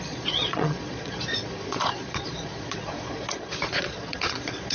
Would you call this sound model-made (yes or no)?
yes